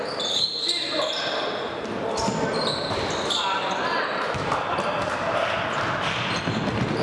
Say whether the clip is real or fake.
real